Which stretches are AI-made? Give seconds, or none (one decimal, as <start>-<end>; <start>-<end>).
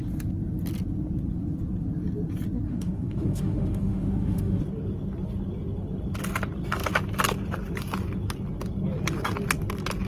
2.7-4.6